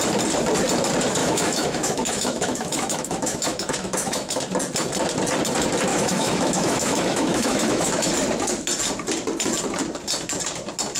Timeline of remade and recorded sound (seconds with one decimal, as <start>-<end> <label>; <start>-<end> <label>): 0.0-1.2 recorded; 1.2-4.4 remade; 4.4-5.9 recorded; 5.9-8.1 remade; 8.1-11.0 recorded